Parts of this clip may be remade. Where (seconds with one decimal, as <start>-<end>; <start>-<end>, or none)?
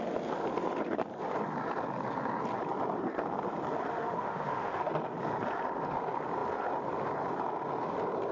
3.9-4.9